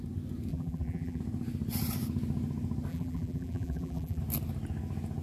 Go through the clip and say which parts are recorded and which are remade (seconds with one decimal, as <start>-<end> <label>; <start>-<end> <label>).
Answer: 0.0-0.5 recorded; 0.5-1.2 remade; 1.2-2.9 recorded; 2.9-4.2 remade; 4.2-5.2 recorded